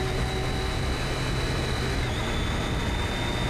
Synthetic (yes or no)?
no